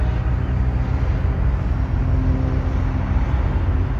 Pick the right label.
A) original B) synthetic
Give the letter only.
A